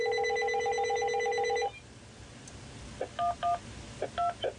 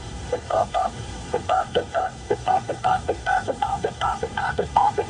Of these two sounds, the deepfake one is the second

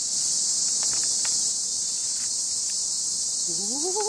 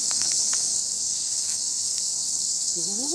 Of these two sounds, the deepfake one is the second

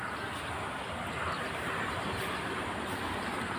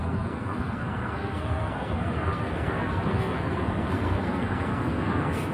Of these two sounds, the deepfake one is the second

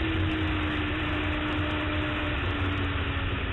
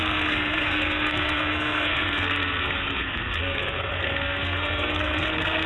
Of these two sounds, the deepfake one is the second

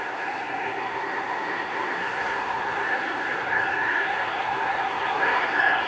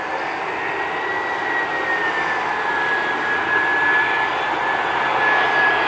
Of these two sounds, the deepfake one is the first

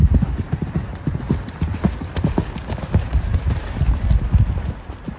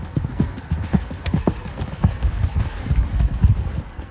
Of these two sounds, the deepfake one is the second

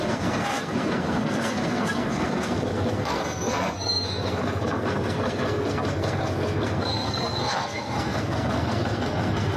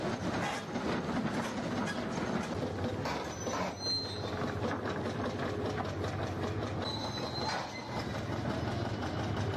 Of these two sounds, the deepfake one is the first